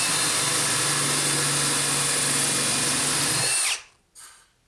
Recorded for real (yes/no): yes